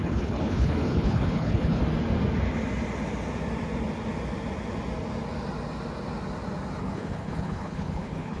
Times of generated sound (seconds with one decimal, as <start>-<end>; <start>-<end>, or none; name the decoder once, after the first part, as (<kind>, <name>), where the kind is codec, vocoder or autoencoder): 0.0-1.8 (codec, HILCodec); 6.8-8.4